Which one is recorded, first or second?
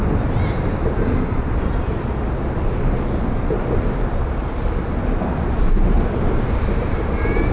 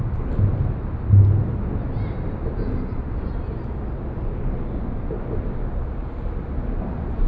second